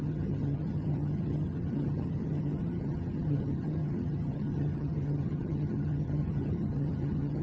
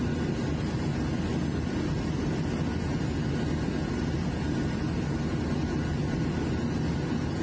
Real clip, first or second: second